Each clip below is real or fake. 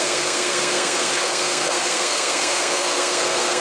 fake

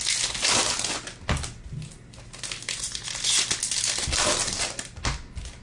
real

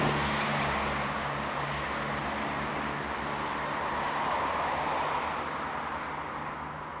real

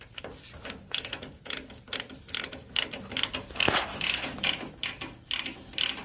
real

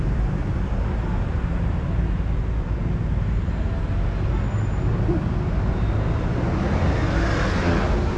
real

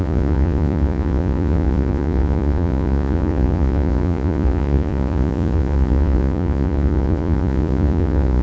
fake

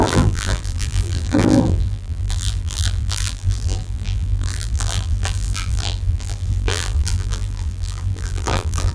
fake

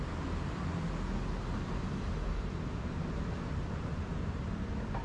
real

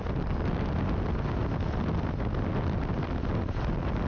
real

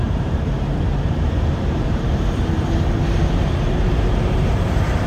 fake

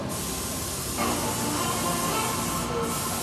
real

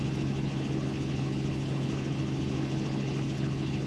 fake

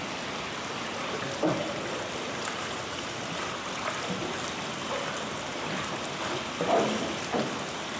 real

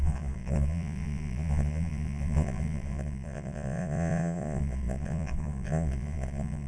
fake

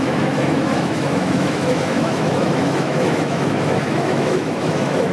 fake